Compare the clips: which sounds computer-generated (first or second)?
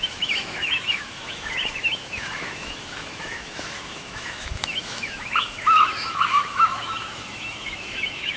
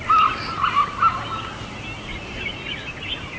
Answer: first